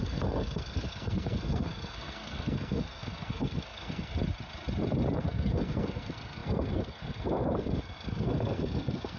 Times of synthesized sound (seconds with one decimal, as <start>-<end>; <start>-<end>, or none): 0.0-4.2; 5.2-9.2